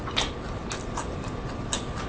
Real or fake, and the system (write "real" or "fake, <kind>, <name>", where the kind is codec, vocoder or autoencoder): real